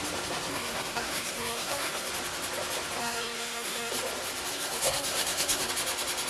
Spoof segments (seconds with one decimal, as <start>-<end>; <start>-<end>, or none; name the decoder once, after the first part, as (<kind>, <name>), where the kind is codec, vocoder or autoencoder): 0.5-2.1 (codec, SNAC); 3.0-3.9; 4.5-5.7